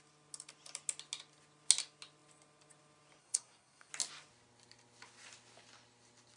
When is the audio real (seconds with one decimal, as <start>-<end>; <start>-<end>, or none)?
0.0-3.2; 3.9-6.4